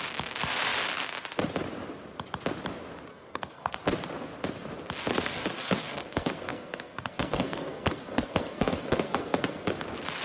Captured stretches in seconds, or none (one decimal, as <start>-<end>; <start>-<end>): 0.0-3.1; 3.8-5.1; 9.7-10.2